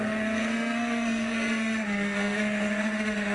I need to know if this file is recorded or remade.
remade